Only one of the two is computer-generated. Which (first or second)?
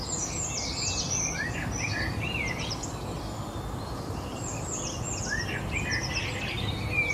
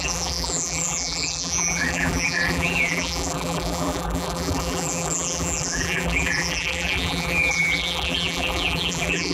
second